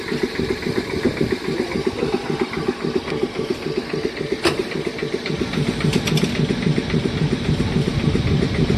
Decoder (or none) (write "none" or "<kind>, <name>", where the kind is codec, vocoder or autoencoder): none